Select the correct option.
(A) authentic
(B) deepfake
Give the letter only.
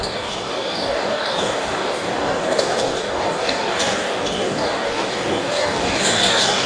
B